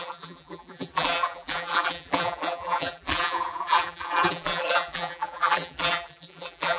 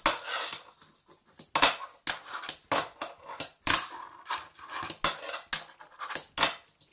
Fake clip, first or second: first